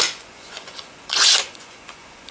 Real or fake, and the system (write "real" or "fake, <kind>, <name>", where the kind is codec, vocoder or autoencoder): fake, vocoder, Vocos